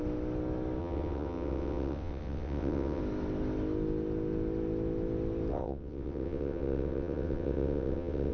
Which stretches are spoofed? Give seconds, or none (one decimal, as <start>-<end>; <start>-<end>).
0.8-3.0; 5.5-8.3